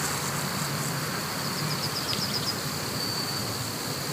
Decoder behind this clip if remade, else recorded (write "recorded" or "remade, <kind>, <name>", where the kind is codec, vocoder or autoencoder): recorded